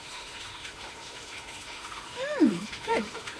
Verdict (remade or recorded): remade